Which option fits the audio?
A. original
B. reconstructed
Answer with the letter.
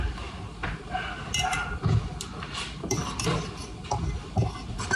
A